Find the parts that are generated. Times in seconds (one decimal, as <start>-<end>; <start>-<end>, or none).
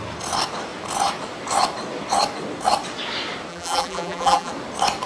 3.5-4.5